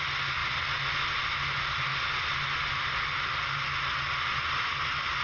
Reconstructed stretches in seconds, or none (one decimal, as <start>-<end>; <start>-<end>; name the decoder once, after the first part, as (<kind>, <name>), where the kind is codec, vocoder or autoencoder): none